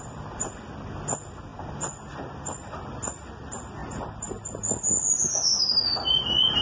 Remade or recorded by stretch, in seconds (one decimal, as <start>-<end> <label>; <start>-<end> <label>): 0.0-6.6 recorded